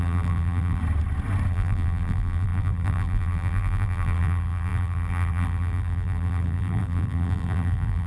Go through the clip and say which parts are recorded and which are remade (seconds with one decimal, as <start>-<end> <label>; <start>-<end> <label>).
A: 0.0-0.8 remade; 0.8-1.5 recorded; 1.5-8.1 remade